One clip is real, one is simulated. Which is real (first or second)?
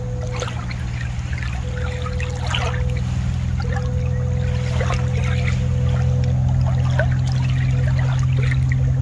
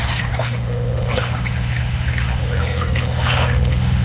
first